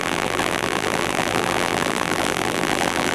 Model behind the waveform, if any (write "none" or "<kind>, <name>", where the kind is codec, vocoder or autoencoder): vocoder, BigVGAN v2